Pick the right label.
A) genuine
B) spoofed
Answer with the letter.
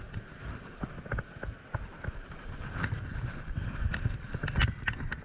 A